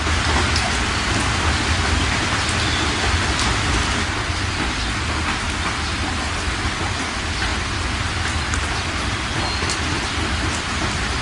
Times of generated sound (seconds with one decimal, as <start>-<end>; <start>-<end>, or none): none